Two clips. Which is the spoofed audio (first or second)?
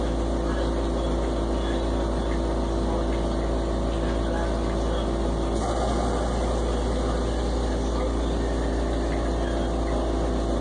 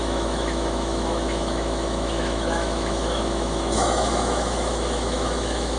second